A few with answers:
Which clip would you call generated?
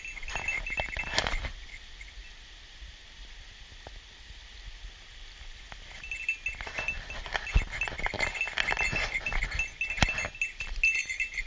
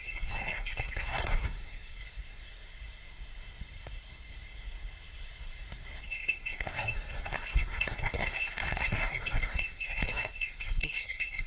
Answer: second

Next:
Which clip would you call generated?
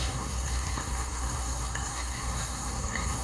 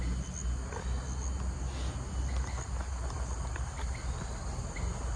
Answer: first